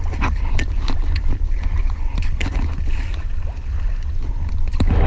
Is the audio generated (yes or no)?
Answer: no